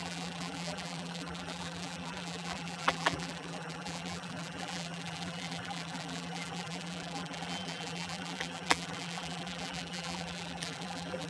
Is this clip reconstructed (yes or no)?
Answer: yes